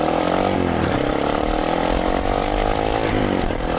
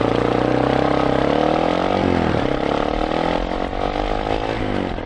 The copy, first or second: first